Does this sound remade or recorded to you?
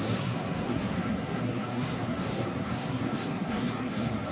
remade